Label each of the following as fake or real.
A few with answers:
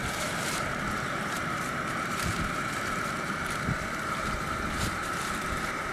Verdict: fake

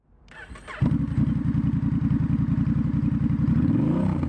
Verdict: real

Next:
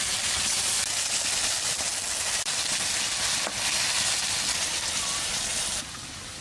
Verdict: real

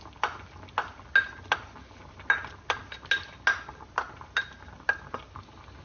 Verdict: real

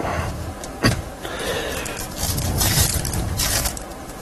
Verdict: fake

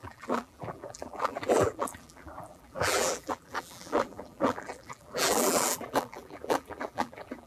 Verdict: fake